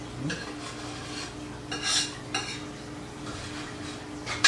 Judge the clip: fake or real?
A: real